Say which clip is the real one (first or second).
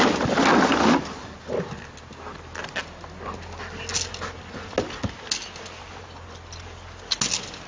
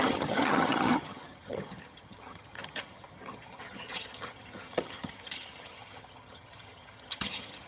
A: first